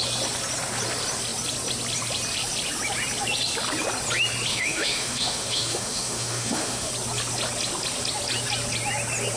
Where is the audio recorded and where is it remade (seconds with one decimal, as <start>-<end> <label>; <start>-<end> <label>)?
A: 0.0-4.5 recorded; 4.5-6.9 remade; 6.9-9.4 recorded